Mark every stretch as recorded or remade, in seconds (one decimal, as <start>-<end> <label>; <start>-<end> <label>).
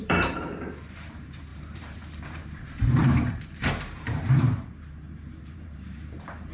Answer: 0.0-6.5 remade